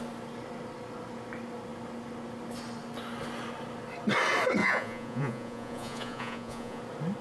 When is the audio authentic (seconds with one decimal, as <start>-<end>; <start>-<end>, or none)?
0.0-4.6; 6.8-7.2